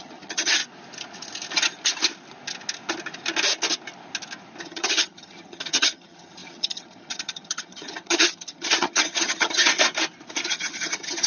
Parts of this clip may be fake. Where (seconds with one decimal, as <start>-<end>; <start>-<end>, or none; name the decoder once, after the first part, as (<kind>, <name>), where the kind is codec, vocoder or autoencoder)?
0.0-0.6 (vocoder, HiFi-GAN); 4.6-9.7; 10.5-11.3